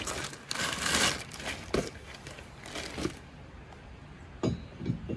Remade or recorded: recorded